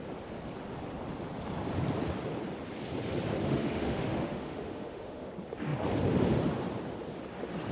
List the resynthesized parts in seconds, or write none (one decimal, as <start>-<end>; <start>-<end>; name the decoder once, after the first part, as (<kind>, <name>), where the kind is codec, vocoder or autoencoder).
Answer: 3.4-5.3 (autoencoder, DAC-VAE)